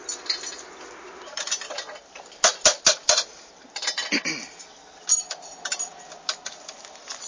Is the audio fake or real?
real